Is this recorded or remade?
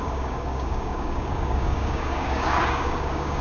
remade